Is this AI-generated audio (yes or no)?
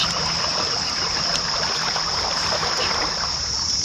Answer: yes